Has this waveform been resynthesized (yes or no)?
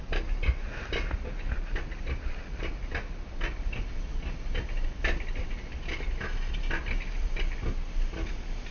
no